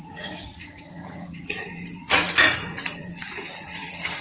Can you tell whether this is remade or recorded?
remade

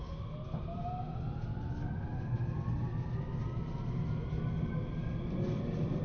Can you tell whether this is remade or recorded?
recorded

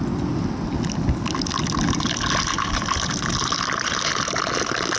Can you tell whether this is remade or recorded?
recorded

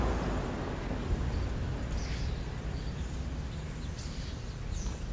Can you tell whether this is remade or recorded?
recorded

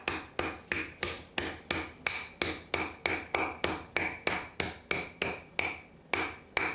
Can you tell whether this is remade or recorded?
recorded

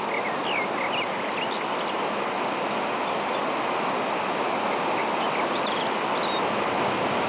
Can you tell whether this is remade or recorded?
recorded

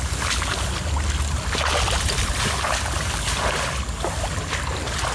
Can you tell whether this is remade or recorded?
recorded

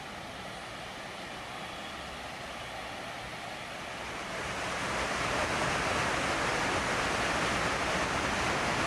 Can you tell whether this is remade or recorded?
recorded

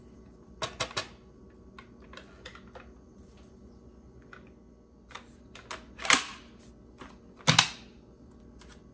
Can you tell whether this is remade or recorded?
recorded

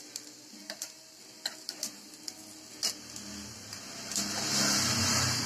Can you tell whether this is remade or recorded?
recorded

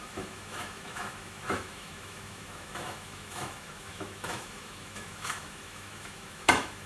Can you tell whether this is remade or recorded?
remade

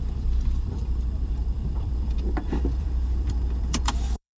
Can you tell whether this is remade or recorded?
remade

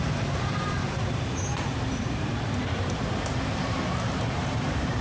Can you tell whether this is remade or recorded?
remade